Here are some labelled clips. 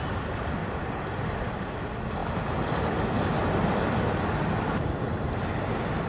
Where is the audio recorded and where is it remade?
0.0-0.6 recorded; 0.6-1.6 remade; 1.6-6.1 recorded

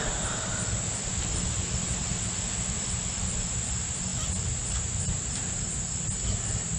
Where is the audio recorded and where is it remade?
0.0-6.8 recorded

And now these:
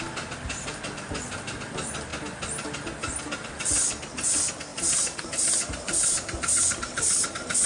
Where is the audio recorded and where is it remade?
0.0-4.7 recorded; 4.7-7.1 remade; 7.1-7.7 recorded